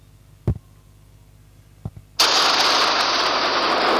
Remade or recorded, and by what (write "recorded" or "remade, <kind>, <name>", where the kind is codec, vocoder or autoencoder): recorded